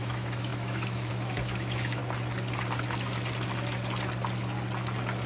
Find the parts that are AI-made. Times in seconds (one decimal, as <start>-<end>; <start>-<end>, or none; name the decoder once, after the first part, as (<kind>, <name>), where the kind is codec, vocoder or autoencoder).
0.0-2.0 (autoencoder, DAC-VAE)